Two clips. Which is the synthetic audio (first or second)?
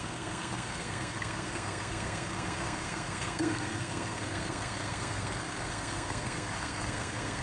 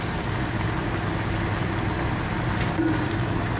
first